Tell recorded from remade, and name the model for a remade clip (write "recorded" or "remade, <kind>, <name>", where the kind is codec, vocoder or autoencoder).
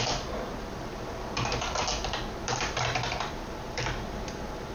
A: remade, vocoder, BigVGAN v2